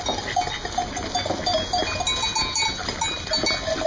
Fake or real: real